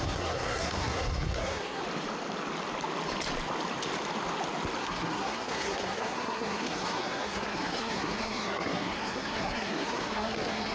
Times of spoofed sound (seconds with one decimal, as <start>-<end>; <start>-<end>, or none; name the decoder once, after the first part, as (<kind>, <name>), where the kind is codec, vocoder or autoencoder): 0.0-1.8 (codec, SNAC); 4.8-10.7